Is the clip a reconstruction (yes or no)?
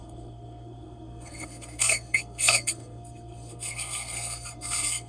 yes